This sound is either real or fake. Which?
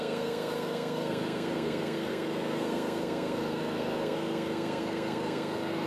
fake